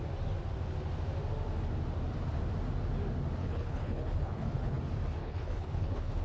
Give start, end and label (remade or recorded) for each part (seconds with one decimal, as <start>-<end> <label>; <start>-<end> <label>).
0.0-3.4 recorded; 3.4-4.8 remade; 4.8-5.2 recorded; 5.2-6.2 remade